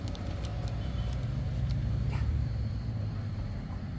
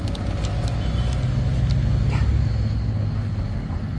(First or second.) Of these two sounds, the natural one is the second